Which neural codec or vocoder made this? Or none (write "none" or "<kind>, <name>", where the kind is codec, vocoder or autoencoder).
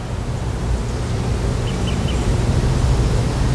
none